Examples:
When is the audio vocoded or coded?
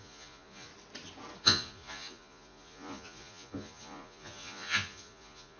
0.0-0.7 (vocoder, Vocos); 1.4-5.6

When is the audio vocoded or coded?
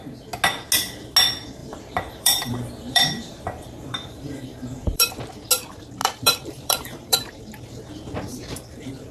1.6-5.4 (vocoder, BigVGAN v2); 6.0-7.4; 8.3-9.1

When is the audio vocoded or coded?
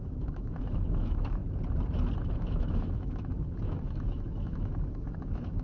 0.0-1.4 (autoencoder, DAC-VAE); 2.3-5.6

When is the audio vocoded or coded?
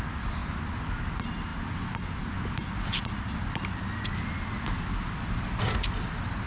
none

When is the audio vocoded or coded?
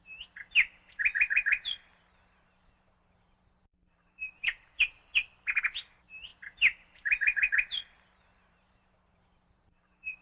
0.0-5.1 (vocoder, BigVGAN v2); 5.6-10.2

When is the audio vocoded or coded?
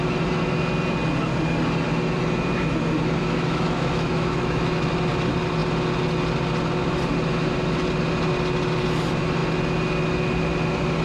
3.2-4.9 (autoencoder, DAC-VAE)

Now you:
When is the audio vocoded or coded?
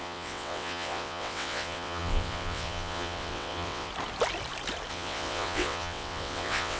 0.0-3.9 (vocoder, WaveNeXt); 4.9-6.8